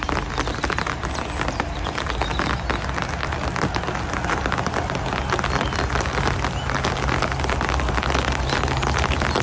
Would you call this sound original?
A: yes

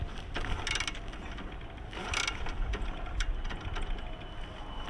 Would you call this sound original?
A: yes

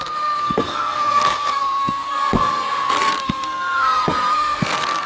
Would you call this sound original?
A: no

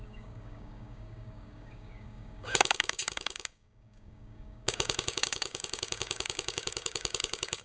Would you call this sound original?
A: no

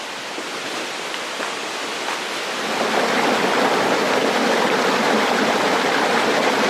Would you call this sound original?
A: yes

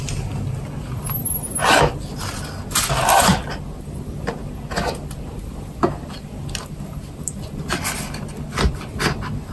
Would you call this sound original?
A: yes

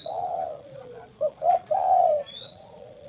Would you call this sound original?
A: no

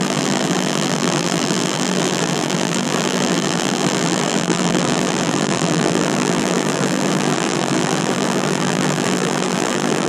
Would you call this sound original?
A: no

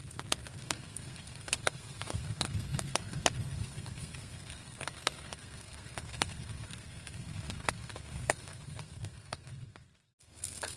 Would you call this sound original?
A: no